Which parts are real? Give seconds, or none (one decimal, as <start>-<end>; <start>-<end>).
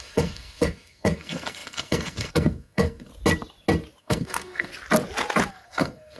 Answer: 3.1-4.0; 4.7-5.5